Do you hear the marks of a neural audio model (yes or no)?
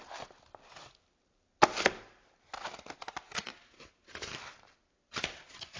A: no